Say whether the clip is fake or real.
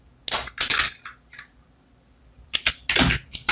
real